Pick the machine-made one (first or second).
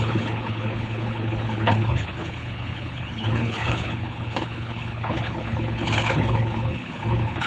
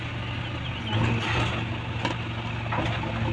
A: first